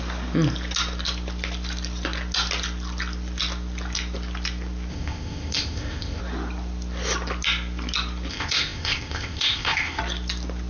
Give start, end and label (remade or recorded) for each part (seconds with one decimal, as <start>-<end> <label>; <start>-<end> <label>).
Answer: 0.0-4.9 recorded; 4.9-6.2 remade; 6.2-8.3 recorded; 8.3-10.0 remade; 10.0-10.7 recorded